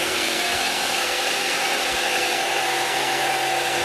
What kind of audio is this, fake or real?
fake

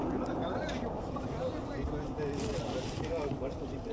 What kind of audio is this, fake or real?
real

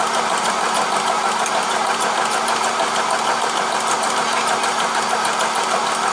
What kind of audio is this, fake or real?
real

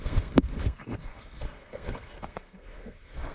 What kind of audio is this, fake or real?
fake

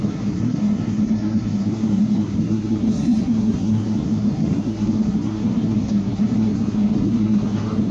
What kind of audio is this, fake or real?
fake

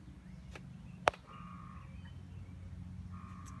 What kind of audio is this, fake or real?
real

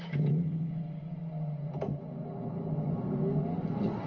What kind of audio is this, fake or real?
real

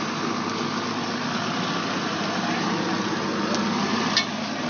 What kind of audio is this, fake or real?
real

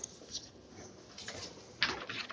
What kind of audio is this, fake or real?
real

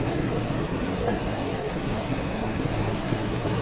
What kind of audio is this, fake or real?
fake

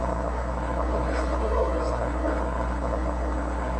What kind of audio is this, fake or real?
fake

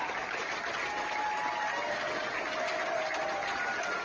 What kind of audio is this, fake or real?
real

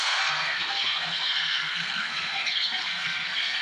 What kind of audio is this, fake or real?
fake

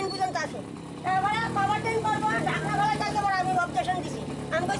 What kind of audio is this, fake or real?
real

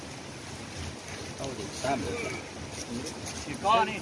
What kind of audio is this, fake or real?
real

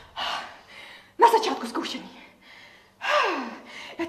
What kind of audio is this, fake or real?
real